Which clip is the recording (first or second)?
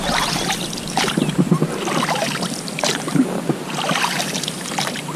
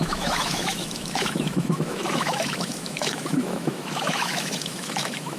first